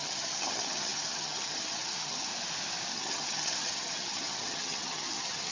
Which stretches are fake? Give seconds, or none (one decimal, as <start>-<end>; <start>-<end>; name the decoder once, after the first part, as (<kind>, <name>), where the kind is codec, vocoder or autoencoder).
0.0-2.3 (vocoder, HiFi-GAN); 2.9-5.5